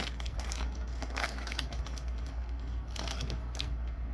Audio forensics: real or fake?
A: fake